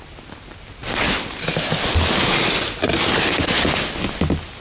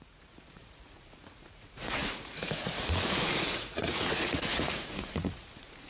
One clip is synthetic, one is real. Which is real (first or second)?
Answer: first